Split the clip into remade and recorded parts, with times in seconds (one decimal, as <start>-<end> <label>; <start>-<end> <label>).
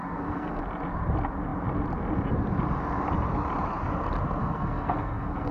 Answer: 0.0-0.6 remade; 0.6-4.4 recorded; 4.4-5.5 remade